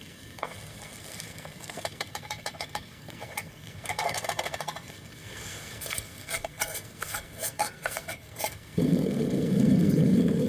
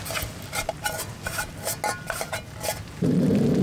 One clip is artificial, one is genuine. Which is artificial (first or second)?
first